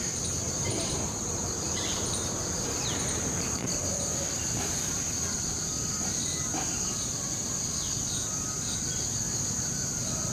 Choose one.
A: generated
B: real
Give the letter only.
A